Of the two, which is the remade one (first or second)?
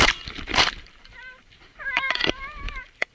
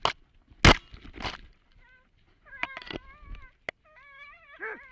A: first